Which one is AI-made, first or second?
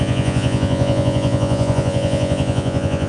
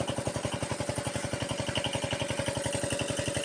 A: first